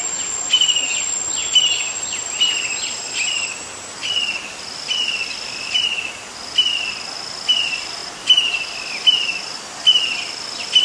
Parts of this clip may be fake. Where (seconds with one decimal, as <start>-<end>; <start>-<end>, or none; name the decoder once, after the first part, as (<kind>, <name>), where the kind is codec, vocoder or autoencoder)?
none